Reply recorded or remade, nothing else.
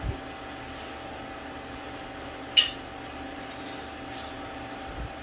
recorded